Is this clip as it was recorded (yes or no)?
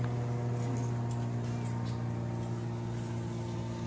yes